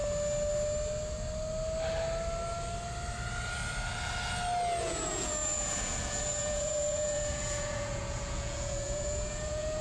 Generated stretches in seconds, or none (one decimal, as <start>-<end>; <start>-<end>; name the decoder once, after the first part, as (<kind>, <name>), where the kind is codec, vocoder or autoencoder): 4.8-9.8 (vocoder, Vocos)